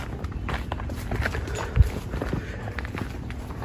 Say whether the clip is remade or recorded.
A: recorded